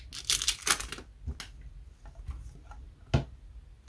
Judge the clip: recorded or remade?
recorded